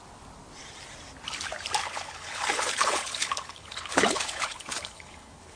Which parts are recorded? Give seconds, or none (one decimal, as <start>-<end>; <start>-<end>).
0.0-1.8